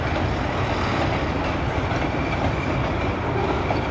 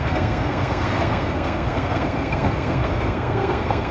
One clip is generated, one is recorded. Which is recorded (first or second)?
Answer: first